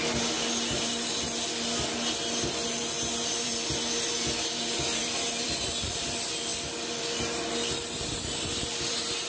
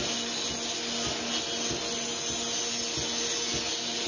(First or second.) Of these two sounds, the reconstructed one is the first